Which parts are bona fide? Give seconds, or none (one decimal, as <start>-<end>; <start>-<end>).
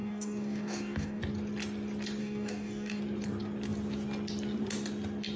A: 1.2-2.2; 3.0-5.4